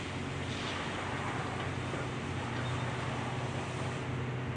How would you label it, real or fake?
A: real